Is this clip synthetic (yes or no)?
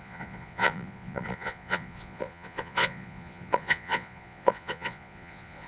yes